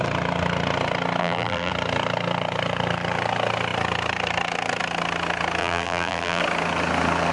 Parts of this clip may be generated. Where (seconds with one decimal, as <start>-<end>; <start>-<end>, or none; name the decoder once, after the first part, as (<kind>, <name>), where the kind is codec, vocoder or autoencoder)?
1.2-1.7 (vocoder, BigVGAN v2); 5.6-6.4